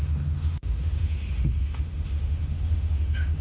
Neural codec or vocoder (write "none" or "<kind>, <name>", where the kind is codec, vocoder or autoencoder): autoencoder, DAC-VAE